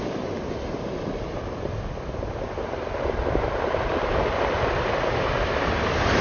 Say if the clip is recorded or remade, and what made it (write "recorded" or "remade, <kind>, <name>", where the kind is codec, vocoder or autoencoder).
recorded